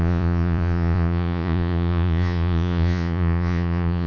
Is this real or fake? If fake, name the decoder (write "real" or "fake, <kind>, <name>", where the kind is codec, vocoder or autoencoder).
fake, vocoder, Vocos